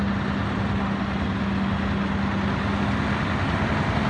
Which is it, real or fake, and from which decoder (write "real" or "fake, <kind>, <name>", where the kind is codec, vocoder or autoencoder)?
real